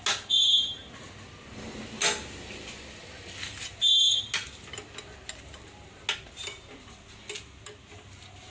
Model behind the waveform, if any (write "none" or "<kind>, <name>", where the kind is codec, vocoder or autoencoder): none